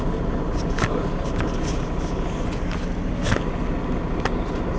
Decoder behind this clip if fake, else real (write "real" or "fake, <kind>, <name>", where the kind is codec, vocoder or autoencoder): real